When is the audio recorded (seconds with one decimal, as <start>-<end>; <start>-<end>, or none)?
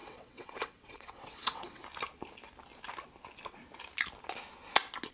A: 1.8-5.1